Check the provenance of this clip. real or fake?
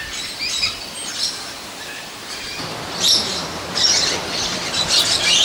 real